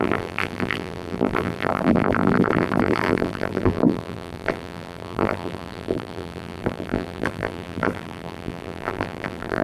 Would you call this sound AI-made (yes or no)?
yes